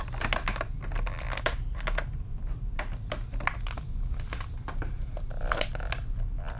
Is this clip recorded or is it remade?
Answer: recorded